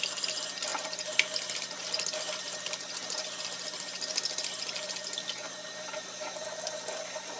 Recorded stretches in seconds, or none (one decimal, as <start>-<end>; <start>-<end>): 0.0-7.4